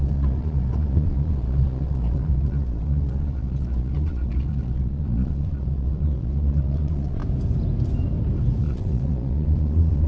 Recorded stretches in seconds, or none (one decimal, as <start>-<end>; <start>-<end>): 7.2-8.6

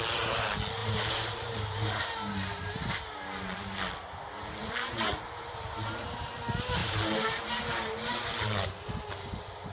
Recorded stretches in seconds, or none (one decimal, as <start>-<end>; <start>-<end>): 0.0-0.8; 2.9-4.6; 6.3-6.8; 7.6-9.7

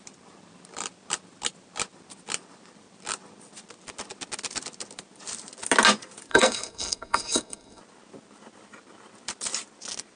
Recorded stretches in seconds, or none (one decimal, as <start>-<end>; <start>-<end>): 0.0-6.3; 7.8-10.2